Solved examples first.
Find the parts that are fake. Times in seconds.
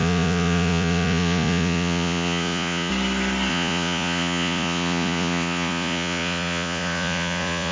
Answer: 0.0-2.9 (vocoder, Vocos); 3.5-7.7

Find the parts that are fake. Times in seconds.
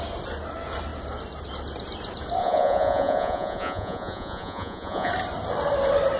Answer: 2.4-5.1 (vocoder, Vocos)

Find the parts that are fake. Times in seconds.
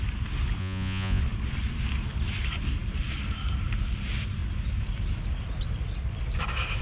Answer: 0.6-1.2 (vocoder, Vocos)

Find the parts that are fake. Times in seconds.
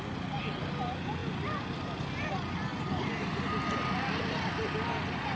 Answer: none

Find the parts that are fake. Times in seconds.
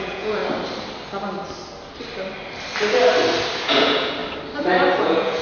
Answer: 0.0-0.4 (vocoder, Vocos); 3.6-4.2; 5.0-5.4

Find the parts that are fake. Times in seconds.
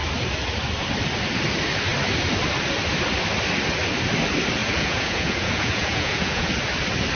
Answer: 4.6-6.5 (vocoder, Vocos)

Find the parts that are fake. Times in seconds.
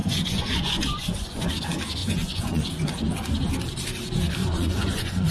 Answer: 0.0-1.5 (vocoder, Vocos); 2.0-2.7; 4.4-5.3